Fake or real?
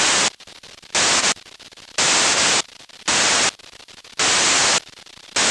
real